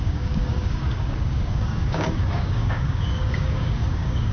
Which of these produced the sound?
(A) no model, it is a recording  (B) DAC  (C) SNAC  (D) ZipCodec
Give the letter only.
B